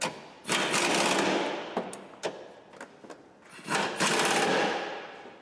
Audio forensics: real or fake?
real